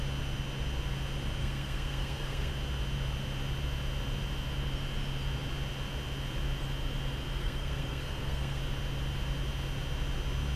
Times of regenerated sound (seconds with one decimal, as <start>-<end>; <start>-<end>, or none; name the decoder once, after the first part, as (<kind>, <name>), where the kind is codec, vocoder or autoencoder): 1.4-2.5 (codec, SNAC); 7.4-8.6